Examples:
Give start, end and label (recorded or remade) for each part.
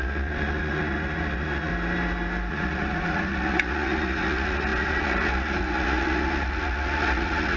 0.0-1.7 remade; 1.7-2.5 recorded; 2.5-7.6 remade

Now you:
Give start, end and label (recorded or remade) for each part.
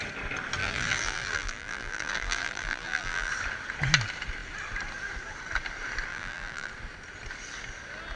0.0-0.6 recorded; 0.6-3.3 remade; 3.3-6.1 recorded; 6.1-6.7 remade; 6.7-8.2 recorded